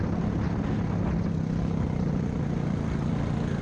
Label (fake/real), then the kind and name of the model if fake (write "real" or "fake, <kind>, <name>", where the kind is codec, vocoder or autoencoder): real